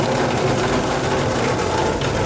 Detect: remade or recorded recorded